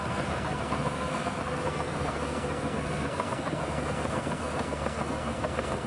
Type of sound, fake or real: fake